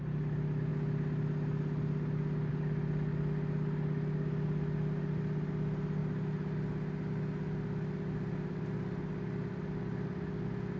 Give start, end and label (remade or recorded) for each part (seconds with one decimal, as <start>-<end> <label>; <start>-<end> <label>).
0.0-10.8 recorded